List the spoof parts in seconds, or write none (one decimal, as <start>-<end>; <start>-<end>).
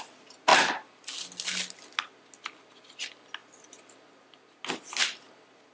none